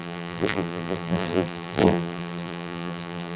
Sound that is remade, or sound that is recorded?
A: remade